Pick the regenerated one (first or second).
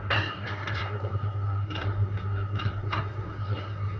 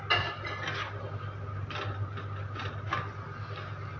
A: first